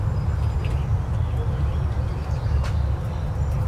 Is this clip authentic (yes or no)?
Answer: yes